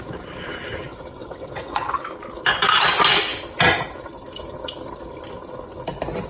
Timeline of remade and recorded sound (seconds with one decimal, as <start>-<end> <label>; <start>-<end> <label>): 0.0-1.2 recorded; 1.2-2.0 remade; 2.0-6.3 recorded